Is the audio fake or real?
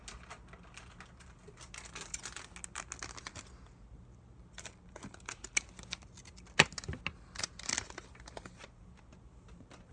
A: real